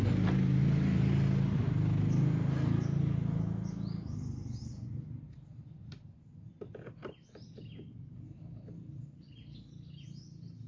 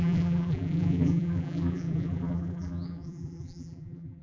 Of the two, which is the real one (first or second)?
first